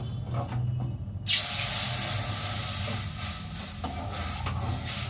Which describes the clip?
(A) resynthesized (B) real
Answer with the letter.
B